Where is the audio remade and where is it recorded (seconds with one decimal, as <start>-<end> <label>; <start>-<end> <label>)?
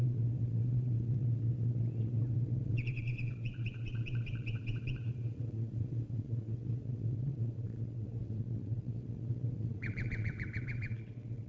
0.0-11.5 remade